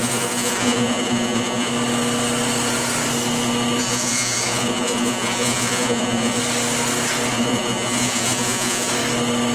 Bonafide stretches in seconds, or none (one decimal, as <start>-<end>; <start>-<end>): 1.7-3.8; 6.4-7.3; 8.9-9.5